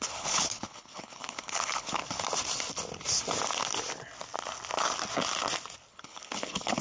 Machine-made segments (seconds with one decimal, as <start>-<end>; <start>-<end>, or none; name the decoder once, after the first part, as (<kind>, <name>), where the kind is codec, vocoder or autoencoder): 0.0-2.0 (codec, HILCodec); 5.9-6.8